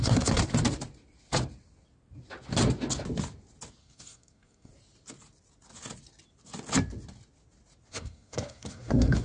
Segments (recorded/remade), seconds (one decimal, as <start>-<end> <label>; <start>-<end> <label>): 0.0-0.4 remade; 0.4-3.8 recorded; 3.8-4.7 remade; 4.7-7.9 recorded; 7.9-9.2 remade